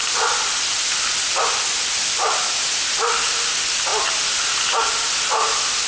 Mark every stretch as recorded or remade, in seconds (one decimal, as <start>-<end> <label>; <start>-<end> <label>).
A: 0.0-5.9 recorded